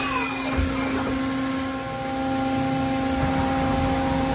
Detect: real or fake real